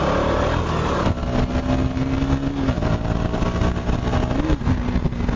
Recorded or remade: recorded